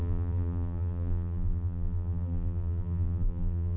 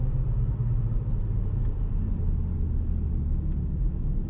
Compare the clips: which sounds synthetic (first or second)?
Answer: first